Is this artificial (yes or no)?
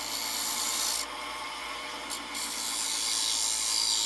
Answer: no